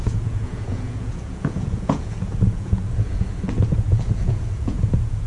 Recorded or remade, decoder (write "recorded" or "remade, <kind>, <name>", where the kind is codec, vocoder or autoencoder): remade, vocoder, Vocos